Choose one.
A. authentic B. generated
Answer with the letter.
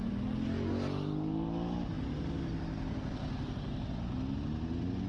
A